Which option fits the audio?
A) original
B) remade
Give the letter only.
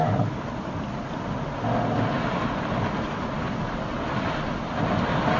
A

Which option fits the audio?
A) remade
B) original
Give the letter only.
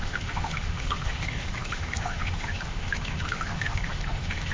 A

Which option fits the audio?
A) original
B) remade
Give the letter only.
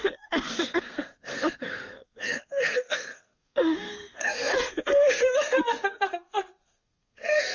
B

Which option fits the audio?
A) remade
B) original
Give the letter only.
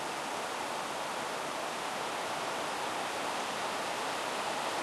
B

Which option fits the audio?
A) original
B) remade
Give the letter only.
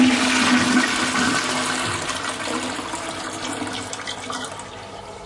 A